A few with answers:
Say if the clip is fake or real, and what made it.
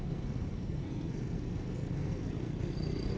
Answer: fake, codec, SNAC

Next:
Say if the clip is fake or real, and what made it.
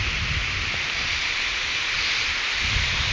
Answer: fake, vocoder, BigVGAN v2